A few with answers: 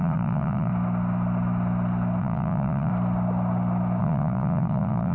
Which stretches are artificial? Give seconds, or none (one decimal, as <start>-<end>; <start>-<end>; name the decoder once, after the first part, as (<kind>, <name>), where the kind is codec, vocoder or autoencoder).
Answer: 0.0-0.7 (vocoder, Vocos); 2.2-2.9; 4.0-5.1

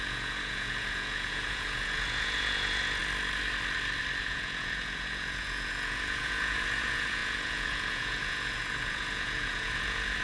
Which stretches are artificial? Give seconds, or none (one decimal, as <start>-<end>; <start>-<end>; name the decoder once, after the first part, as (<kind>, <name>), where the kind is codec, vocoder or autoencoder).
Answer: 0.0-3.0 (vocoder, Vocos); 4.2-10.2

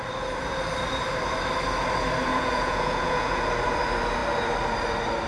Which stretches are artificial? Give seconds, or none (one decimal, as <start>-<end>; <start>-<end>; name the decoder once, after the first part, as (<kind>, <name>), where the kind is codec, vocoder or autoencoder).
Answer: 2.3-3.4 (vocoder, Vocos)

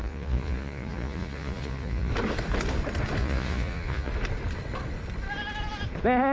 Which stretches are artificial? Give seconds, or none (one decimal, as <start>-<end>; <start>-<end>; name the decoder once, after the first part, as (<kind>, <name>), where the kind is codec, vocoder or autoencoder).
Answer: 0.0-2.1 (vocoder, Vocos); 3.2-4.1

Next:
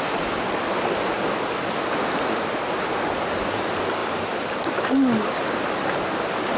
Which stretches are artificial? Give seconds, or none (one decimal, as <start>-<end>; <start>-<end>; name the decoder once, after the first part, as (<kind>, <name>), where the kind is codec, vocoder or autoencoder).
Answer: none

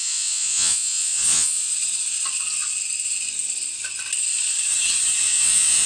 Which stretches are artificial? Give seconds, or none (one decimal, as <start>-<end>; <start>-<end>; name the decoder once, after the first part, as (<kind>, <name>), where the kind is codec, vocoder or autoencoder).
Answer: 0.0-1.7 (vocoder, Vocos); 5.2-5.9